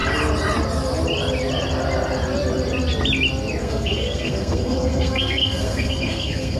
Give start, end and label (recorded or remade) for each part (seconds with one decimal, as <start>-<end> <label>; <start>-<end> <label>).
0.0-3.6 recorded; 3.6-6.6 remade